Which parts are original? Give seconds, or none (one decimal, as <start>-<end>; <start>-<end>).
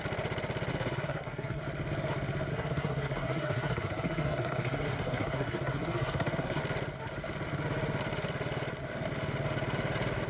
0.0-0.7; 1.6-2.5; 6.6-10.3